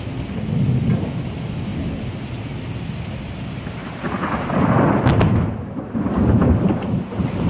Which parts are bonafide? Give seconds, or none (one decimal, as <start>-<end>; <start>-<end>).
0.0-6.4